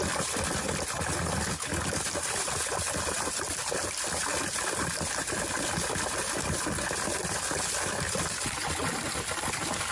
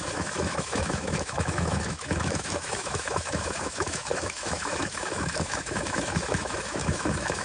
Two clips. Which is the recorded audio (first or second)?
first